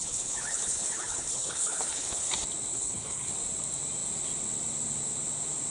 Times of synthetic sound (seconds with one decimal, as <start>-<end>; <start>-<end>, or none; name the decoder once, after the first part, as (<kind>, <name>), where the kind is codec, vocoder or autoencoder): 0.0-2.3 (codec, HILCodec); 2.7-3.3